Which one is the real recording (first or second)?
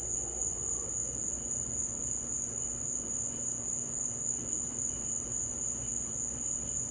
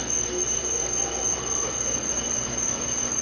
second